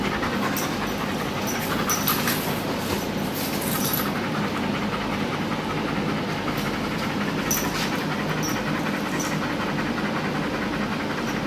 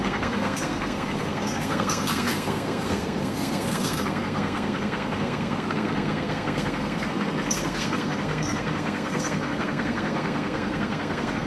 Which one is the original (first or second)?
first